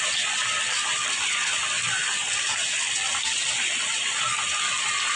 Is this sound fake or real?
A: real